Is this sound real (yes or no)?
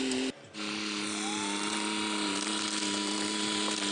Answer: yes